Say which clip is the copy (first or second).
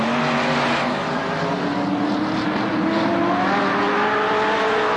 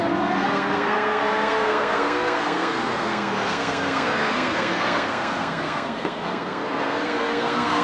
second